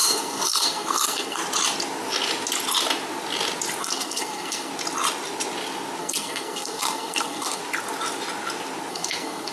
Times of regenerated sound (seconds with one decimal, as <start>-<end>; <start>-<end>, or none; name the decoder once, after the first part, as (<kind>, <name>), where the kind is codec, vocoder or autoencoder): 0.0-1.4 (codec, SNAC); 3.8-4.7; 6.0-7.6; 8.9-9.5